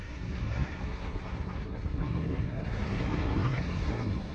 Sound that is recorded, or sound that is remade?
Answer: remade